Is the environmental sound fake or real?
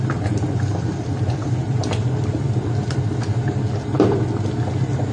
real